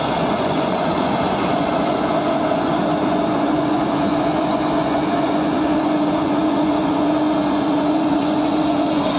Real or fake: fake